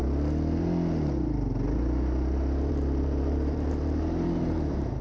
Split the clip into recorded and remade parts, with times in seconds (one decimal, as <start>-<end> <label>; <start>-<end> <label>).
0.0-2.7 recorded; 2.7-5.0 remade